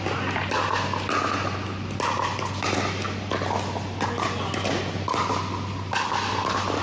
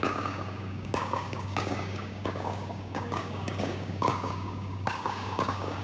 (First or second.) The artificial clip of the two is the second